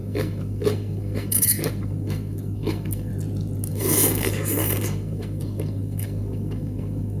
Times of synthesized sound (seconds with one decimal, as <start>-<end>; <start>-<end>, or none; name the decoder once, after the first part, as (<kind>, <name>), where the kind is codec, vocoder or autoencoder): 0.0-3.1 (codec, SNAC); 3.7-7.2